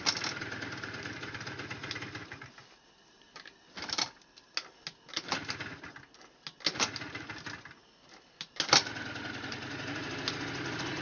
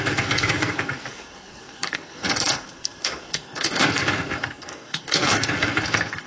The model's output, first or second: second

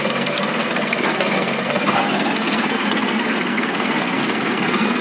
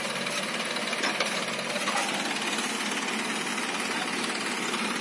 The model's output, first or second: first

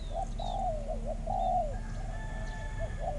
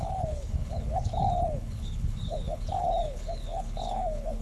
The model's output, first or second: second